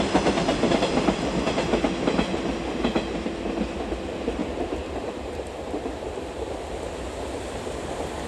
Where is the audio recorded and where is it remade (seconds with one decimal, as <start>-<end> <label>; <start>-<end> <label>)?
0.0-4.4 recorded; 4.4-5.5 remade; 5.5-8.3 recorded

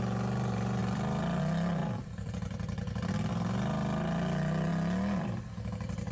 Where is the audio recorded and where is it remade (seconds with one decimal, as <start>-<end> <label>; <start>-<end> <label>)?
0.0-0.8 recorded; 0.8-1.4 remade; 1.4-1.8 recorded; 1.8-3.3 remade; 3.3-6.1 recorded

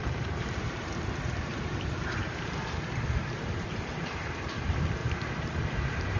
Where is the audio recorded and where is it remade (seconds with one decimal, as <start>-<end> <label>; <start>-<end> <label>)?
0.0-5.0 remade; 5.0-5.8 recorded; 5.8-6.2 remade

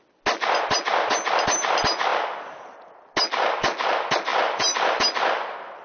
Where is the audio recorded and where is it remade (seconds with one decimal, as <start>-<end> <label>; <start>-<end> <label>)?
0.0-4.3 recorded; 4.3-5.0 remade; 5.0-5.8 recorded

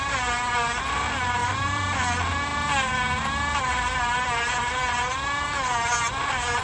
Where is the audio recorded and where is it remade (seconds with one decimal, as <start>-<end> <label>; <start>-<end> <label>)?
0.0-1.4 recorded; 1.4-2.0 remade; 2.0-6.6 recorded